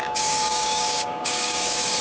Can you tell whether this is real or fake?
fake